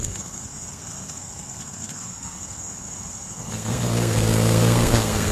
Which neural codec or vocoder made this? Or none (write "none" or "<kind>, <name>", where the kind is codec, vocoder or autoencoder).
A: codec, SNAC